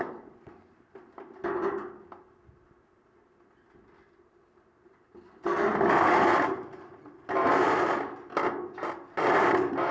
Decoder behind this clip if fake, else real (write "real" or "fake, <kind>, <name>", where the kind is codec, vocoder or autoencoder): real